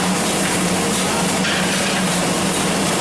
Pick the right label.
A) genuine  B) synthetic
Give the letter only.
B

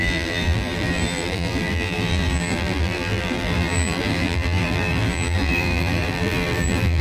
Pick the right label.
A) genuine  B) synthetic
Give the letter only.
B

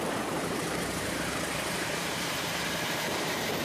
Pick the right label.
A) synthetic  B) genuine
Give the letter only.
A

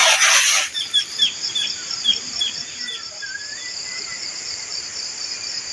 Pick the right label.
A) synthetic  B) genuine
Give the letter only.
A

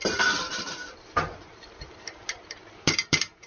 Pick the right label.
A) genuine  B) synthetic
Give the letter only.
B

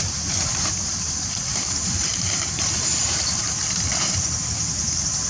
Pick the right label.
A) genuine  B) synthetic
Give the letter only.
B